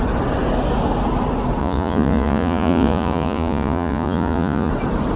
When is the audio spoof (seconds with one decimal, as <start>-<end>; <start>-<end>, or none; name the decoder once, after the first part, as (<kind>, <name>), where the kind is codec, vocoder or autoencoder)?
1.6-4.7 (vocoder, Vocos)